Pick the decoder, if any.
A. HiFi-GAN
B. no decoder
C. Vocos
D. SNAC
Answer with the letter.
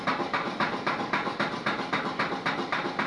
B